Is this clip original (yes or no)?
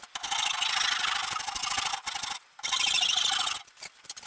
yes